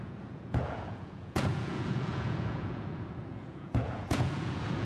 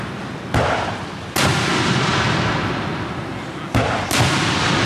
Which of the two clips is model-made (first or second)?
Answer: first